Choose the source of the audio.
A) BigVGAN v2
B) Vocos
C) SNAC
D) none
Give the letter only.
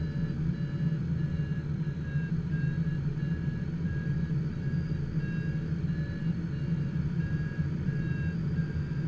D